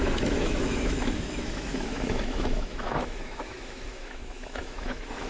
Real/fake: fake